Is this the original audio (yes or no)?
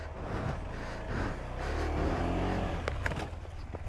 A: yes